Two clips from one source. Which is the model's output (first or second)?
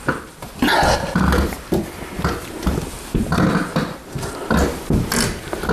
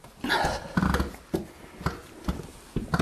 first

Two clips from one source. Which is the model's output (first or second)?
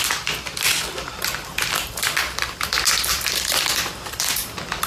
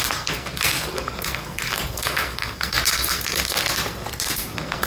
second